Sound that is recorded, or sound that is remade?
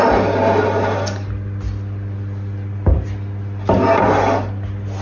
recorded